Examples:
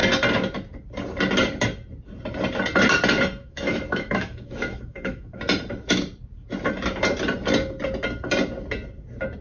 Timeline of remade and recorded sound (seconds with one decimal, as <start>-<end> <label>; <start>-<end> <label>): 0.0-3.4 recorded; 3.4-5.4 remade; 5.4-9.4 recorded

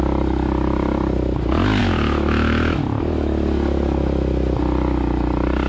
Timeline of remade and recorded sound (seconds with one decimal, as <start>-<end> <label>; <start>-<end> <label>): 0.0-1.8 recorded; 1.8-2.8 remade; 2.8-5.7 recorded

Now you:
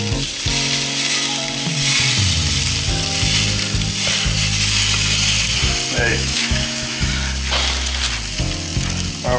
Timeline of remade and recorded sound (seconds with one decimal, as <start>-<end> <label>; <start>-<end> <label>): 0.0-6.1 recorded; 6.1-7.1 remade; 7.1-9.4 recorded

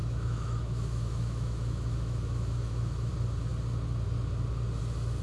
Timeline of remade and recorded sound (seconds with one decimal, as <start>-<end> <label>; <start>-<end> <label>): 0.0-3.1 remade; 3.1-5.2 recorded